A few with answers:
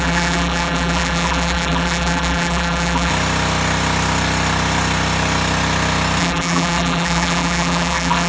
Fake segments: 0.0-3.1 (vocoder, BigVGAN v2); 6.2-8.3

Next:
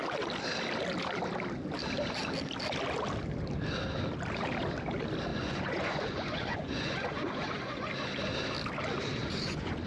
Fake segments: 5.3-7.9 (vocoder, Vocos); 9.2-9.9

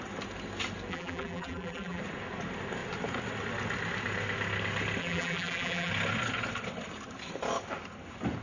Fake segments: 0.9-2.0 (vocoder, BigVGAN v2); 5.0-5.9

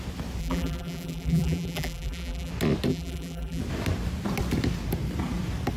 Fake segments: 0.4-2.5 (vocoder, BigVGAN v2); 2.9-3.6

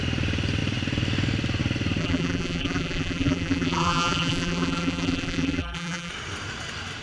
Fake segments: 2.0-6.1 (vocoder, BigVGAN v2)

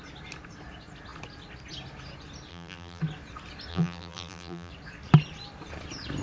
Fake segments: 2.5-3.0 (vocoder, BigVGAN v2); 3.7-4.7